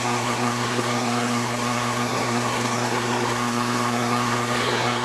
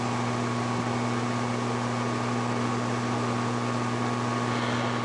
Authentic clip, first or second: second